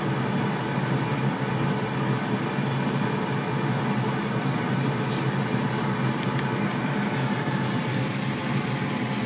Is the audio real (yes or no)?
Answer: yes